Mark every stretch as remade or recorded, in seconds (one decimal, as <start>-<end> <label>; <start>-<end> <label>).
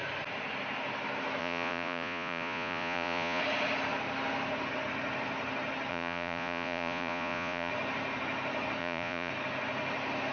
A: 0.0-1.4 recorded; 1.4-3.4 remade; 3.4-5.9 recorded; 5.9-7.7 remade; 7.7-8.8 recorded; 8.8-9.3 remade; 9.3-10.3 recorded